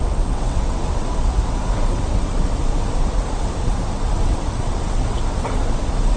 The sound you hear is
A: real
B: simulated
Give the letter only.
B